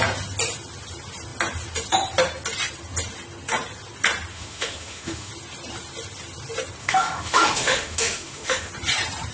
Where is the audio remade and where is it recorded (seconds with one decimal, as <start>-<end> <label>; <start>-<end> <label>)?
0.0-4.3 recorded; 4.3-5.3 remade; 5.3-6.8 recorded; 6.8-8.7 remade; 8.7-9.3 recorded